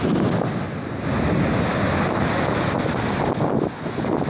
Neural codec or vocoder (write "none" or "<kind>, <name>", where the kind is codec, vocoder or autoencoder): none